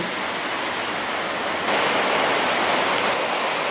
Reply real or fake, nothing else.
real